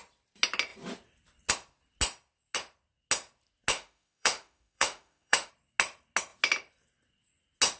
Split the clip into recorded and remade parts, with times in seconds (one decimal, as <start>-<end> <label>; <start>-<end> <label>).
0.0-3.7 recorded; 3.7-5.5 remade; 5.5-7.8 recorded